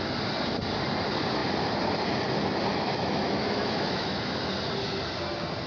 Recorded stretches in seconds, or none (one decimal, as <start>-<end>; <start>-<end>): 0.0-2.7; 4.5-5.7

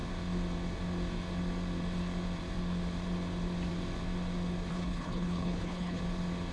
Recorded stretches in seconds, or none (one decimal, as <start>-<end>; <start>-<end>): 0.0-4.7; 6.0-6.5

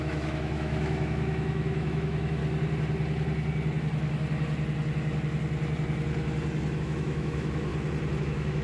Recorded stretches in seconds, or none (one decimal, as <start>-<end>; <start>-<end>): 2.4-6.8; 7.7-8.2

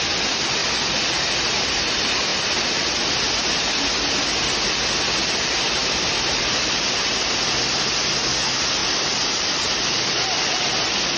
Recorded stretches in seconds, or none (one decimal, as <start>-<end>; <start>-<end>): 0.0-5.8; 8.3-8.8; 10.0-11.2

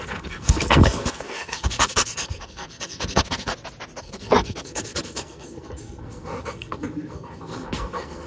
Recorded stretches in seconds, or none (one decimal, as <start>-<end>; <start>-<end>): 3.5-4.0